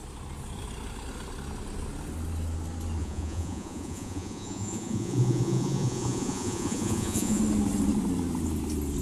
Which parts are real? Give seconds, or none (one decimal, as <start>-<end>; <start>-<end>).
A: 0.0-3.0; 7.4-9.0